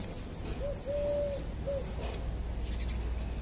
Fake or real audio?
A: real